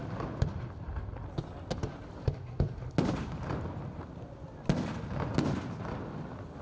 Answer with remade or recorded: recorded